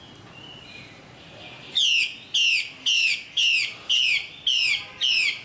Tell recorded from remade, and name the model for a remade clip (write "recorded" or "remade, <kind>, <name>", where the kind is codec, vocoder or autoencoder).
recorded